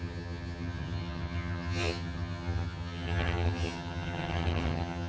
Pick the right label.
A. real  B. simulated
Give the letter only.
B